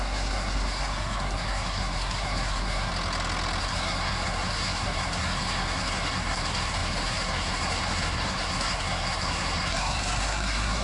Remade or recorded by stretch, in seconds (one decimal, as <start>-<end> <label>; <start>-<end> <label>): 0.0-2.9 remade; 2.9-3.6 recorded; 3.6-10.8 remade